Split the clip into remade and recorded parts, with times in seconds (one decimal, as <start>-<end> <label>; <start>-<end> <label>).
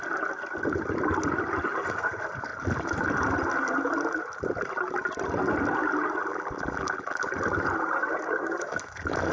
0.0-6.2 recorded; 6.2-7.3 remade; 7.3-9.3 recorded